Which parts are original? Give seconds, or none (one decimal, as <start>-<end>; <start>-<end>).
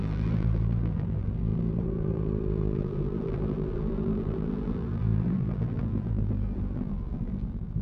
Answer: none